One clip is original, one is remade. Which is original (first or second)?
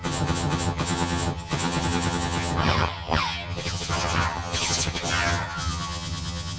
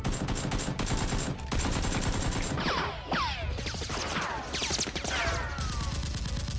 second